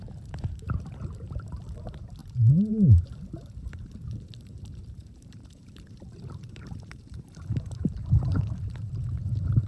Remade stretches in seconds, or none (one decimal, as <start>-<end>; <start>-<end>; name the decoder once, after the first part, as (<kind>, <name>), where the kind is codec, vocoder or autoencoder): 0.0-9.7 (vocoder, BigVGAN v2)